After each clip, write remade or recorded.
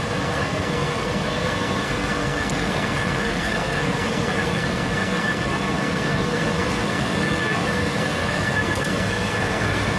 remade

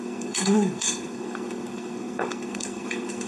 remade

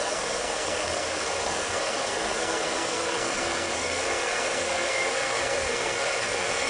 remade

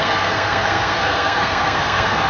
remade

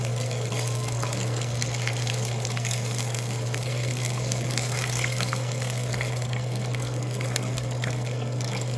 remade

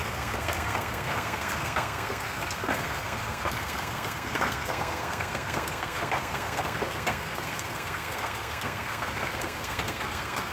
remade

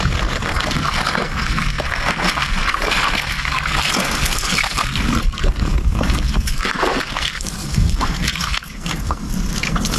remade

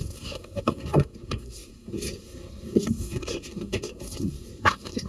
remade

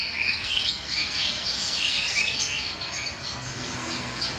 remade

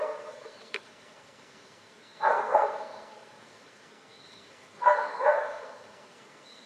remade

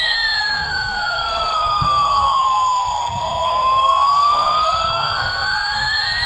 remade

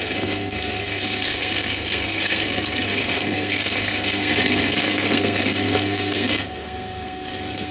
remade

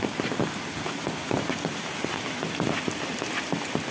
recorded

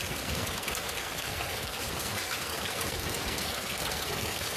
remade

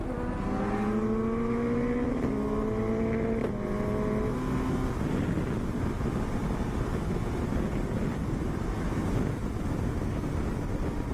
recorded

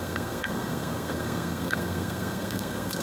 remade